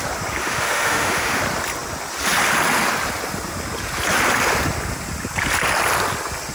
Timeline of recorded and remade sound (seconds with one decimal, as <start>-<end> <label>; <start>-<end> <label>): 0.0-0.4 recorded; 0.4-1.4 remade; 1.4-6.5 recorded